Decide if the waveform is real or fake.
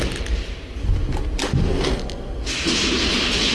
real